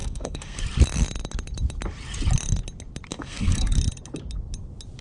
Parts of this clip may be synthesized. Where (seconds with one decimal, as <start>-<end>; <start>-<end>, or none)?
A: 0.0-0.6; 3.1-3.7